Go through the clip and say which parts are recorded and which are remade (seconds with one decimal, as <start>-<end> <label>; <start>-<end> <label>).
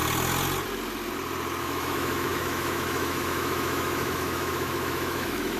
0.0-1.6 recorded; 1.6-5.6 remade